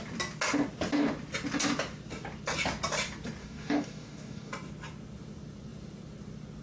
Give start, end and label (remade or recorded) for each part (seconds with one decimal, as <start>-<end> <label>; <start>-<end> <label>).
0.0-3.4 recorded; 3.4-4.5 remade; 4.5-6.6 recorded